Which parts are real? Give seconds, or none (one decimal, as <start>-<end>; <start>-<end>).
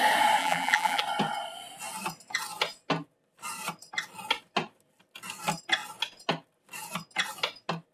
0.0-0.4; 1.0-7.9